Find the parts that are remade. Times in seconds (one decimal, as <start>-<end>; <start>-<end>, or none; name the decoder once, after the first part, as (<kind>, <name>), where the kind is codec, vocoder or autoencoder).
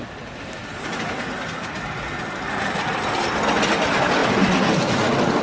none